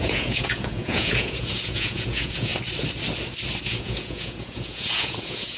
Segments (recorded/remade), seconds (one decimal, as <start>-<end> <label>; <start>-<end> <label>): 0.0-2.5 remade; 2.5-3.6 recorded; 3.6-5.6 remade

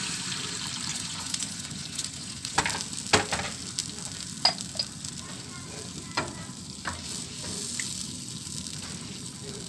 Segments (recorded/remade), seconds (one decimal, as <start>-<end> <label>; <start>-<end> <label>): 0.0-0.9 recorded; 0.9-2.6 remade; 2.6-9.7 recorded